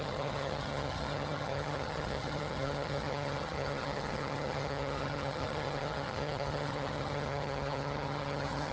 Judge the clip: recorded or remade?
remade